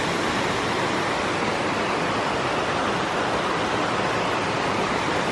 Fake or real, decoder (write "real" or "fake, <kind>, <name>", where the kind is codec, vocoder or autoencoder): real